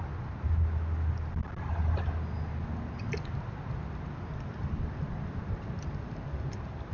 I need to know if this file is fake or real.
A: real